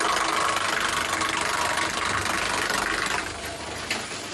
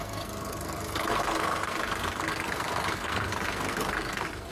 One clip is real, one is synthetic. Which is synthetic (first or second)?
second